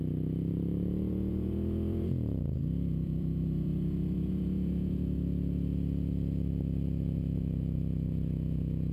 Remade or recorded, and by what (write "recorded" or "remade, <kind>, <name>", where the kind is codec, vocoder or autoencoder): remade, vocoder, Vocos